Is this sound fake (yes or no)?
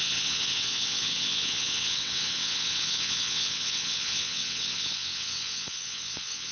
yes